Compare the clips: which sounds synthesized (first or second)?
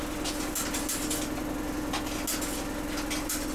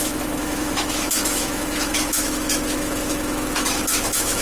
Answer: second